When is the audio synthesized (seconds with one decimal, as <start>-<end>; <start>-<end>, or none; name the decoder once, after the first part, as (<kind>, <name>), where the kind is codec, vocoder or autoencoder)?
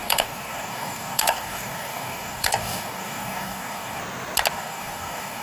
0.0-4.0 (codec, DAC); 4.5-5.4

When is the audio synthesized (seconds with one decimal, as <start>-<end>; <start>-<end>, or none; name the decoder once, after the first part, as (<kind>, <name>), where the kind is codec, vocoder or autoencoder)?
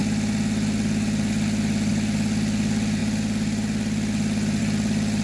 none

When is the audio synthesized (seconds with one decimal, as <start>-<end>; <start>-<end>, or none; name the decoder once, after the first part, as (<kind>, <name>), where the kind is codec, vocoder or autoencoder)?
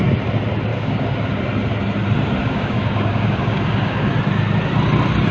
0.7-1.4 (codec, DAC); 2.4-4.1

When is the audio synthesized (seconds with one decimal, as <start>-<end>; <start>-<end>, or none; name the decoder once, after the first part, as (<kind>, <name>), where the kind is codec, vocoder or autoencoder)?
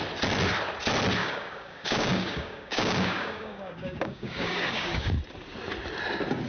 1.2-5.1 (codec, DAC)